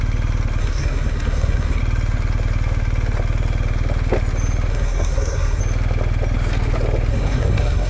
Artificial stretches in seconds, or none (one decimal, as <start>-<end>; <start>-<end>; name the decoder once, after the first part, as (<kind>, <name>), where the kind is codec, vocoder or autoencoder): 0.6-1.8 (codec, SNAC); 4.7-5.6; 7.1-7.9